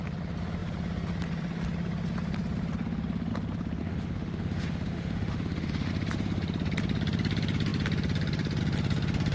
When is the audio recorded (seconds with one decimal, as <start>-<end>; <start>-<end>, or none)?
0.0-3.8; 5.9-9.3

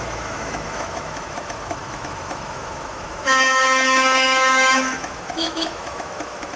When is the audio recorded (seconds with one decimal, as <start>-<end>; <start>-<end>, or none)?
none

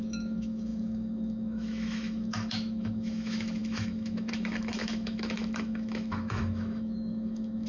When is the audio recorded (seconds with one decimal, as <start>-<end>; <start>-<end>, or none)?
none

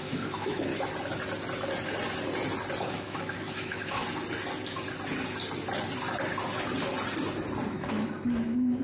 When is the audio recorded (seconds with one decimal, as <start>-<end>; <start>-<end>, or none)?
0.7-2.8; 4.0-7.7

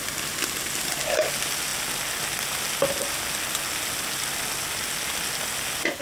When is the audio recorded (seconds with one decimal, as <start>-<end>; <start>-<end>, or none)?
0.0-6.0